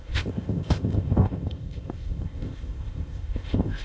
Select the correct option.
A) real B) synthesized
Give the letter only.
B